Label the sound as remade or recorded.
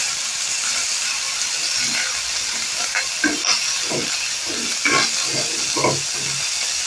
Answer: recorded